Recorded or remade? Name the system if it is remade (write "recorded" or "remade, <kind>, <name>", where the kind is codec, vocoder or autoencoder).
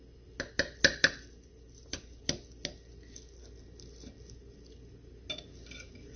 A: recorded